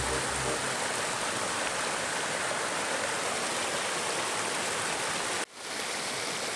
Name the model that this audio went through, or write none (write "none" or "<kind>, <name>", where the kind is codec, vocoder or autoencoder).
none